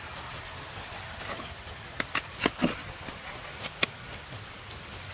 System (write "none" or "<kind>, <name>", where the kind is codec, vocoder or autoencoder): none